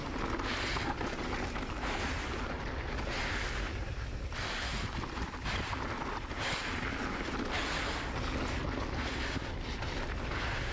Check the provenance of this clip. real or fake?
real